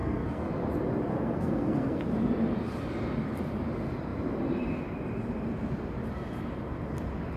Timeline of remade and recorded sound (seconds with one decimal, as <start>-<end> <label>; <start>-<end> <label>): 0.0-0.5 remade; 0.5-1.1 recorded; 1.1-2.0 remade; 2.0-7.4 recorded